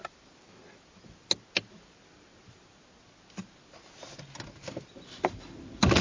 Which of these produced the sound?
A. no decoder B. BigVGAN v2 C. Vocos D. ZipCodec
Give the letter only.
A